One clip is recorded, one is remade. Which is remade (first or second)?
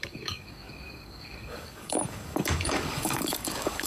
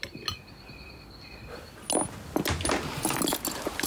first